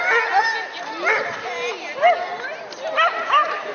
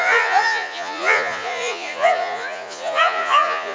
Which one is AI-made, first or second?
second